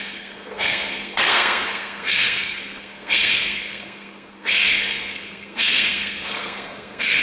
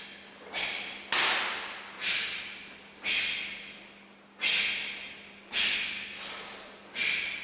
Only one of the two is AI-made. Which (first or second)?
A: first